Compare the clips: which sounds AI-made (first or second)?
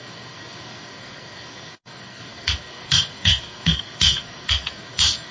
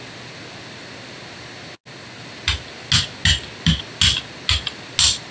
first